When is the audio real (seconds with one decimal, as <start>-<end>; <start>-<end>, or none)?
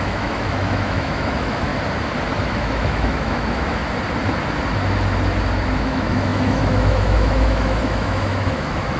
1.7-2.5; 3.8-5.8